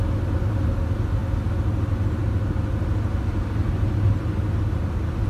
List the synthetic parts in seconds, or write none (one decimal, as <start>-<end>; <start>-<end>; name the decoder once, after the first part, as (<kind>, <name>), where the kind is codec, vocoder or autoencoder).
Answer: none